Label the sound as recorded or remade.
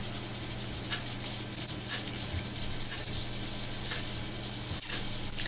recorded